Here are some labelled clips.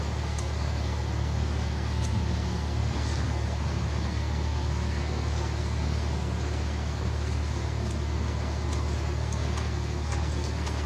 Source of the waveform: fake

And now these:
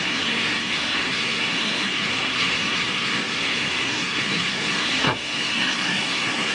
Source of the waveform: fake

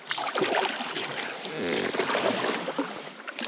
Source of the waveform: real